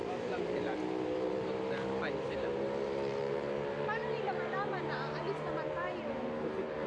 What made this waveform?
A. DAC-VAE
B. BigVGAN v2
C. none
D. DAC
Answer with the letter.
B